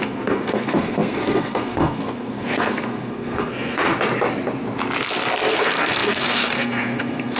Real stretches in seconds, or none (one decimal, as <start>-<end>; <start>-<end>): 3.9-5.5